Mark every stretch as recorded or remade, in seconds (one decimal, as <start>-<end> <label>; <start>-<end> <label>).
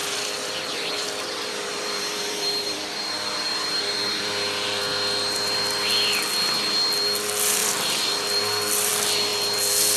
0.0-4.8 remade; 4.8-7.6 recorded; 7.6-8.9 remade; 8.9-10.0 recorded